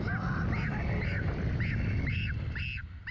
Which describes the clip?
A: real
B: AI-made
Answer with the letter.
A